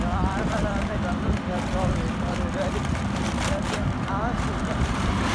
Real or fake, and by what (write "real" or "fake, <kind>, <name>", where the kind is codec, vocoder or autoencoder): fake, vocoder, BigVGAN v2